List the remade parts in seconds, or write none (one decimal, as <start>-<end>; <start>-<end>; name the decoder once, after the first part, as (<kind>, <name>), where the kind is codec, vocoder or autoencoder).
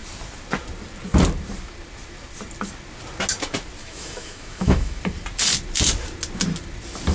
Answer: 3.8-5.0 (autoencoder, DAC-VAE)